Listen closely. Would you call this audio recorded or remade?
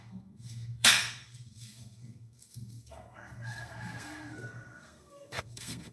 remade